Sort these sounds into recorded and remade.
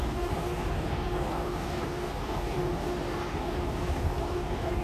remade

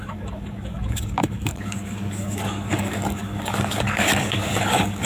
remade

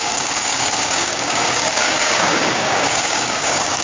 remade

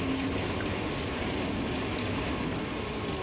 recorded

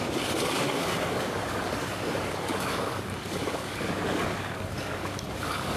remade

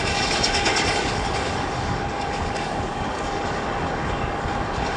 remade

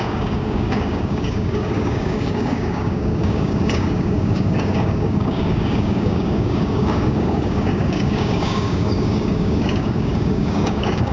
remade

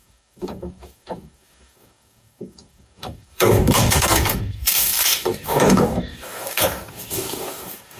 remade